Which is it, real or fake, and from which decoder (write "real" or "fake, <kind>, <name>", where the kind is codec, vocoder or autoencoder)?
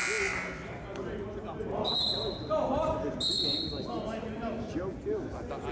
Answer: real